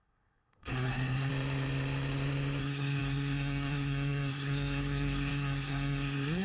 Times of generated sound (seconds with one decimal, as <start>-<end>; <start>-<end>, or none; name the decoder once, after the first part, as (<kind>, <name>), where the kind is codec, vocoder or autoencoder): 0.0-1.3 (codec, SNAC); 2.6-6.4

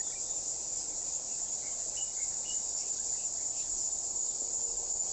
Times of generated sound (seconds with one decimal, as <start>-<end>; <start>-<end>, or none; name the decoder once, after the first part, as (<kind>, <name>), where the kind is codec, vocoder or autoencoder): none

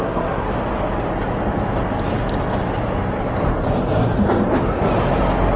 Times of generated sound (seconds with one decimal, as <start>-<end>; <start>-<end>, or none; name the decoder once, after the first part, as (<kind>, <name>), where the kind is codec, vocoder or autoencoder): 0.0-0.5 (codec, SNAC)

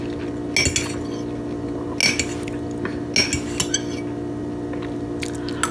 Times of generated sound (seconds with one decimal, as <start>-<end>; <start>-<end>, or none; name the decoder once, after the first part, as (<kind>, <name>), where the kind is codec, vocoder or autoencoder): none